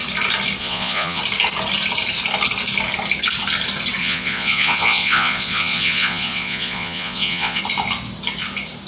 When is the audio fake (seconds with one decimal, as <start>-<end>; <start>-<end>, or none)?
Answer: 0.6-1.2; 4.0-7.6